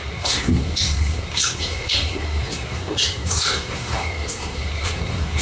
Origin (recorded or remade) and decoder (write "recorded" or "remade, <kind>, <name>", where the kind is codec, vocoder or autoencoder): remade, codec, SNAC